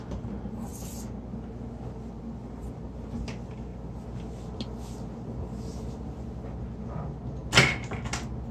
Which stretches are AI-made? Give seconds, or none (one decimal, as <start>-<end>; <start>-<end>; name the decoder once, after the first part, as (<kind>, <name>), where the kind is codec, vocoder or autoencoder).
none